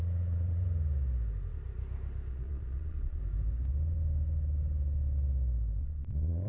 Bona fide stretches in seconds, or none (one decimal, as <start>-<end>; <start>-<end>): 0.6-2.3; 3.2-5.8